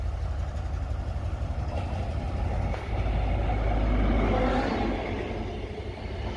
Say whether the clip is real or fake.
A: real